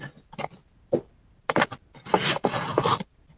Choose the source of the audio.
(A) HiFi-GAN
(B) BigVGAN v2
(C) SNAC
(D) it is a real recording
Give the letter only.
D